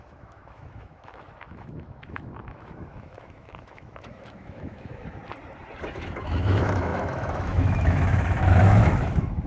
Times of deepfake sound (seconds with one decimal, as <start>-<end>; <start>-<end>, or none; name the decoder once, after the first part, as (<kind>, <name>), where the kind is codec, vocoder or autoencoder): 0.0-5.2 (autoencoder, DAC-VAE); 5.9-9.5